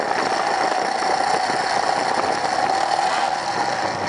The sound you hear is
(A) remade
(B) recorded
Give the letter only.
B